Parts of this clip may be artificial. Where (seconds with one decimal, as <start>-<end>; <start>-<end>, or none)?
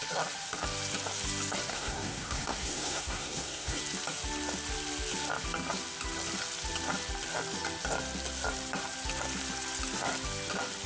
1.7-3.8